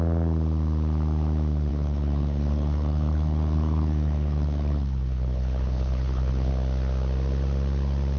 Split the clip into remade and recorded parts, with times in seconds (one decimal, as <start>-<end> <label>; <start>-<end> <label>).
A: 0.0-1.7 recorded; 1.7-6.5 remade; 6.5-8.2 recorded